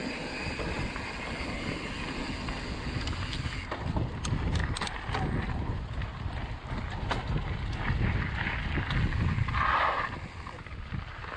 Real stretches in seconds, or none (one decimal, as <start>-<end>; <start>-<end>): 0.0-11.4